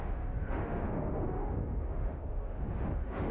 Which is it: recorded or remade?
remade